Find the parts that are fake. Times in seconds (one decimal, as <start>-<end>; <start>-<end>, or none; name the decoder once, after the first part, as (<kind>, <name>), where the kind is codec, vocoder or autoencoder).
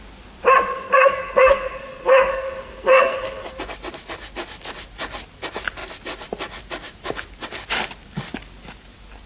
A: 0.7-3.5 (codec, SNAC)